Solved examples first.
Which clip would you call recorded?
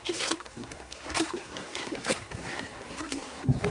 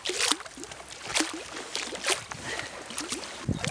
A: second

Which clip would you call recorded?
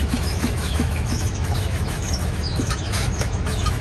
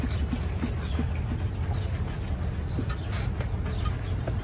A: second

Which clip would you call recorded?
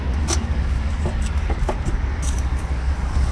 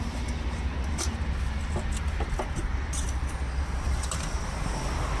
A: second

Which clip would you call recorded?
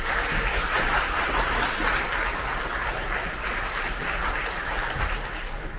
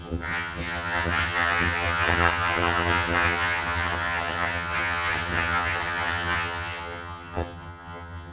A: first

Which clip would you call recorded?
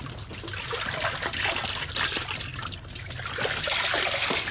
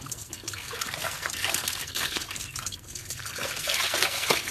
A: first